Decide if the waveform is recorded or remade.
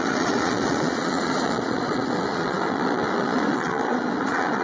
remade